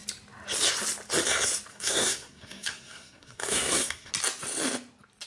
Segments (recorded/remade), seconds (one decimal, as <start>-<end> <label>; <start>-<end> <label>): 0.0-1.7 recorded; 1.7-4.1 remade; 4.1-5.3 recorded